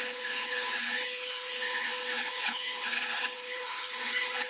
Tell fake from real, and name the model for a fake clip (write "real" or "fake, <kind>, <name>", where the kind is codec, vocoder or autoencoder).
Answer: fake, codec, HILCodec